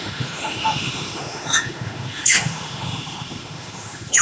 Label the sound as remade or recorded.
remade